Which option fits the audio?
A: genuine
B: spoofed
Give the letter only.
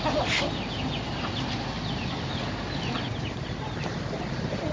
A